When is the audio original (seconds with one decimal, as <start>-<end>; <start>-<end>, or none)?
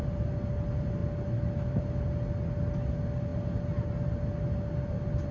0.0-5.3